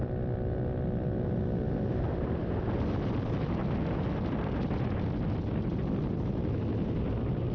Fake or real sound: real